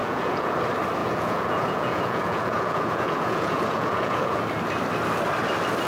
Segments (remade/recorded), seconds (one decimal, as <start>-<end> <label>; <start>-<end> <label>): 0.0-0.5 remade; 0.5-1.0 recorded; 1.0-4.4 remade; 4.4-5.9 recorded